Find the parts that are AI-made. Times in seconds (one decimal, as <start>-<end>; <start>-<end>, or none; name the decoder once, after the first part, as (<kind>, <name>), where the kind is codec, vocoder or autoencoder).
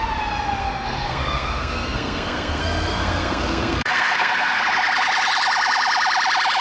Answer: 0.6-4.6 (codec, SNAC)